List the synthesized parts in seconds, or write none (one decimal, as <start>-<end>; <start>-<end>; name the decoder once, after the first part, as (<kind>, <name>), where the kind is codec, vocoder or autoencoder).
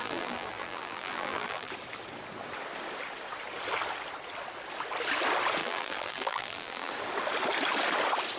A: 0.0-1.7 (vocoder, BigVGAN v2); 5.6-6.9